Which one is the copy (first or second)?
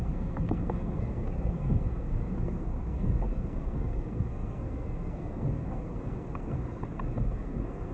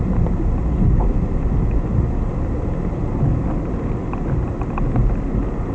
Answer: first